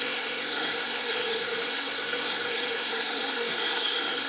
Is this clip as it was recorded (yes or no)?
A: no